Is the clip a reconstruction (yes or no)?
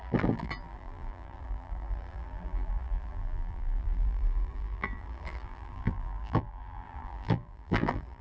yes